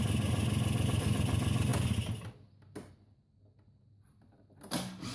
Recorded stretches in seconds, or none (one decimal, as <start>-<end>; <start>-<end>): 0.0-5.1